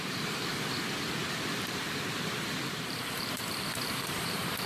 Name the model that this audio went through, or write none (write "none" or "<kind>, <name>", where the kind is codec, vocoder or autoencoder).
vocoder, BigVGAN v2